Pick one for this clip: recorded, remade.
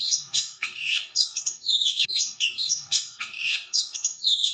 remade